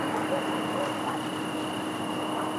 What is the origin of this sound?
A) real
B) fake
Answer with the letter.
A